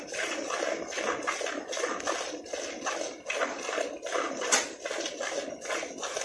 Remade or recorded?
recorded